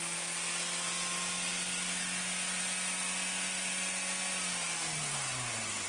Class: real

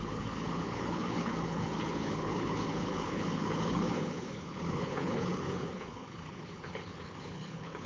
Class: fake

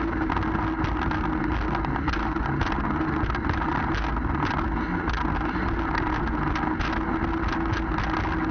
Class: real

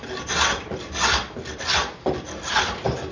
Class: real